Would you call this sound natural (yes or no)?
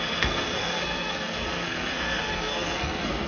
no